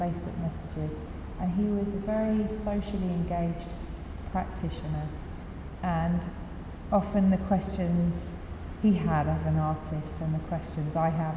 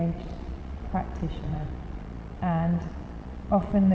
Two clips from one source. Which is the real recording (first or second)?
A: first